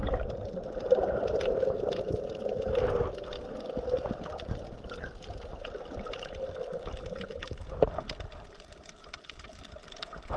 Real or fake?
real